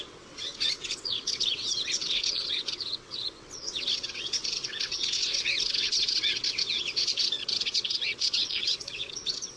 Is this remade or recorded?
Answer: remade